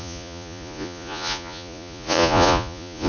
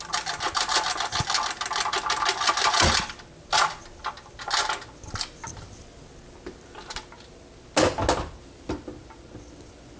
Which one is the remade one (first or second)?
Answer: first